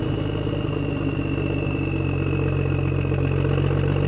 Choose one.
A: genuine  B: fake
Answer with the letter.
A